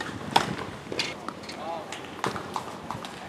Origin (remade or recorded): recorded